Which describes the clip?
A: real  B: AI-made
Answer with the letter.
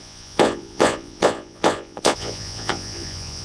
B